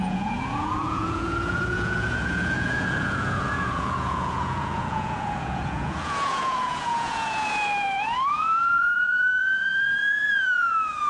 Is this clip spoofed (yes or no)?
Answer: yes